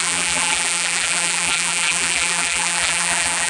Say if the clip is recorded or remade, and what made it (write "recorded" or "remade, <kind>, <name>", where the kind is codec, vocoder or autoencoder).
remade, vocoder, BigVGAN v2